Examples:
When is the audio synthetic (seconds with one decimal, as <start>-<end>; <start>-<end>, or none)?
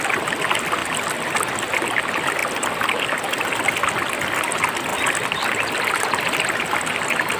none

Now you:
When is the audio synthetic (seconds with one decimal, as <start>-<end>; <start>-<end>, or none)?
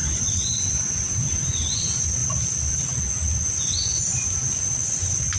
0.0-2.2; 3.6-5.4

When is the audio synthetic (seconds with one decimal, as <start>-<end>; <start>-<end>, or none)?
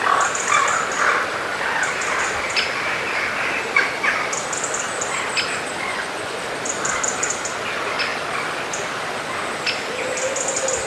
5.9-6.4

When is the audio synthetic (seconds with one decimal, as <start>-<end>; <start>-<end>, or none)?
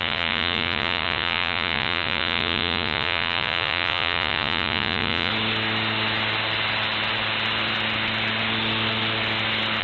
0.0-5.3